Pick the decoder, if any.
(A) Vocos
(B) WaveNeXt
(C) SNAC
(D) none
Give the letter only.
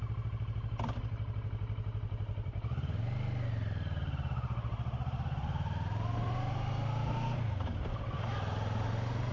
D